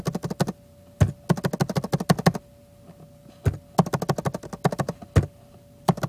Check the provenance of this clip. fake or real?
real